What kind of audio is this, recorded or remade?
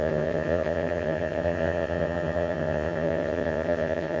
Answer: remade